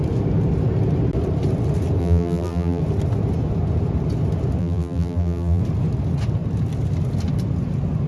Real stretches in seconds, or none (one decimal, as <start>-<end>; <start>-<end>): 0.0-2.0; 2.8-4.6; 5.6-8.1